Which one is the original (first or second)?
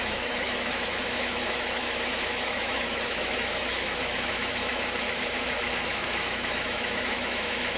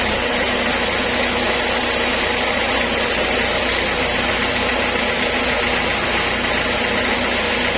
second